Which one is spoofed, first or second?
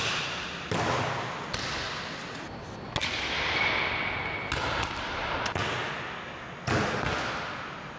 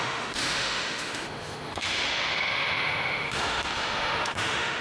second